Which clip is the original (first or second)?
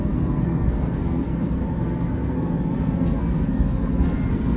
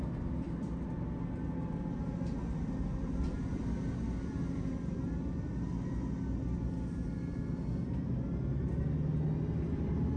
second